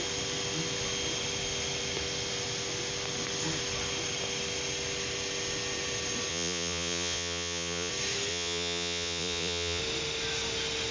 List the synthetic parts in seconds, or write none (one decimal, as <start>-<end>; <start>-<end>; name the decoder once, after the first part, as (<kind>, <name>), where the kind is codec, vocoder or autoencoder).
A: 6.3-7.9 (vocoder, Vocos); 8.3-9.8